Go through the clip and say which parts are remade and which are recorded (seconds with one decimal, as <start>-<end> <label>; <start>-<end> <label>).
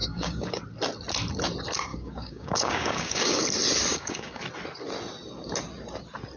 0.0-0.6 remade; 0.6-1.9 recorded; 1.9-3.4 remade; 3.4-3.9 recorded; 3.9-4.4 remade; 4.4-6.4 recorded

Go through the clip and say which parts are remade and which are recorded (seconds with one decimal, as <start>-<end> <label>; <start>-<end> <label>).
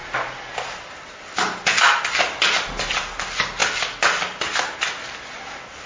0.0-5.9 recorded